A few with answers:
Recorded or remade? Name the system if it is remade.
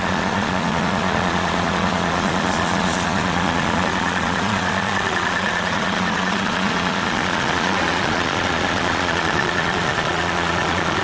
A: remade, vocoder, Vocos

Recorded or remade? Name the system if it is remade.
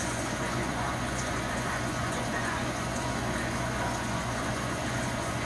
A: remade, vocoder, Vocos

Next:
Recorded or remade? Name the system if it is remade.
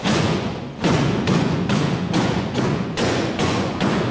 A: remade, vocoder, Vocos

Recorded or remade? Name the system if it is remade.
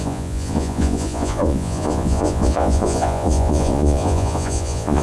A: remade, vocoder, Vocos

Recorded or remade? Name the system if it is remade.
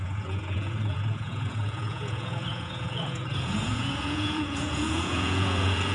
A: remade, vocoder, Vocos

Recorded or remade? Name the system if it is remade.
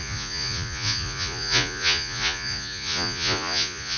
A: remade, vocoder, Vocos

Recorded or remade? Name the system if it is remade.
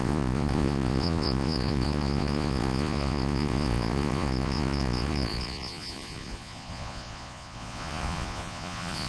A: remade, vocoder, Vocos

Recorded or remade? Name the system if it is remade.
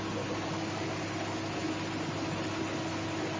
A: recorded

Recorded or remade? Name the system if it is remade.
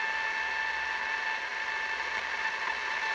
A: recorded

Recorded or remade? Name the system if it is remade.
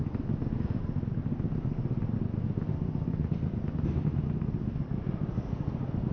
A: recorded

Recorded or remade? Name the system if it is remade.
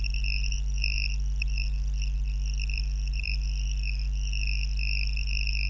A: recorded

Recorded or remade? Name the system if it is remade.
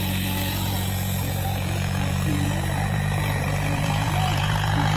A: remade, vocoder, Vocos